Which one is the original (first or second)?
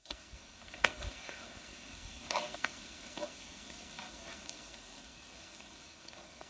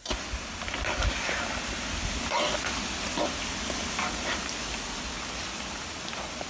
second